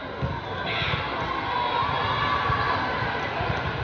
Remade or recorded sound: recorded